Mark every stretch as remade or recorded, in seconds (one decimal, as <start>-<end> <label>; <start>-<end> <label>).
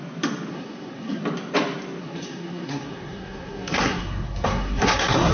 0.0-0.5 recorded; 0.5-1.2 remade; 1.2-2.0 recorded; 2.0-5.3 remade